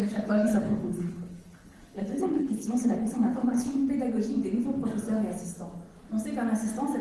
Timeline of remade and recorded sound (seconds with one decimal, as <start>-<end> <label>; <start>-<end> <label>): 0.0-3.8 remade; 3.8-7.0 recorded